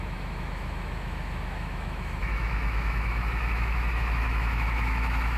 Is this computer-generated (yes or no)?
yes